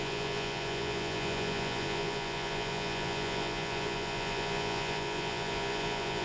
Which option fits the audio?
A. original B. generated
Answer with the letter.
B